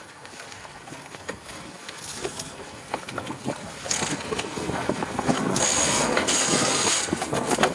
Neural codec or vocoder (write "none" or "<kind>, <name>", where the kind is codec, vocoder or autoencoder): codec, SNAC